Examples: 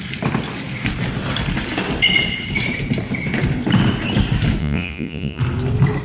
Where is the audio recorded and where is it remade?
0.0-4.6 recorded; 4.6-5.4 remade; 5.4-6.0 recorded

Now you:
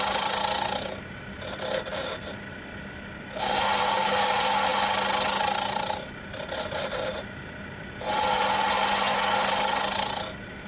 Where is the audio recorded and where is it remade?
0.0-10.7 recorded

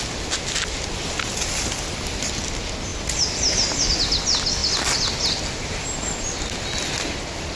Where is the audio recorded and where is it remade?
0.0-7.6 recorded

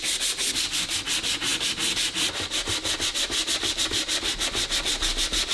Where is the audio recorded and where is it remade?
0.0-5.5 recorded

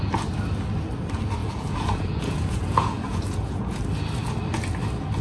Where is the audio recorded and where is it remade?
0.0-1.4 recorded; 1.4-3.8 remade; 3.8-5.2 recorded

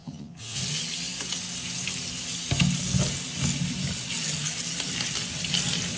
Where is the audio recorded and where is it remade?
0.0-0.6 remade; 0.6-6.0 recorded